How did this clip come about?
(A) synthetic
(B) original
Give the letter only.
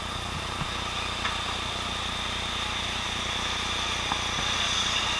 B